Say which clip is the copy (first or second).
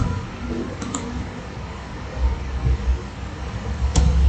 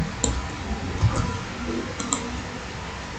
first